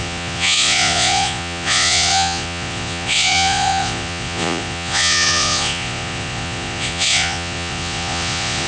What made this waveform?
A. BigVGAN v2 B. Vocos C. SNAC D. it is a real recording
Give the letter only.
B